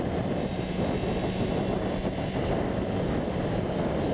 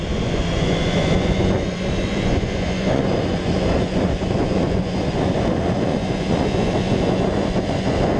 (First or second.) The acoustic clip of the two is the first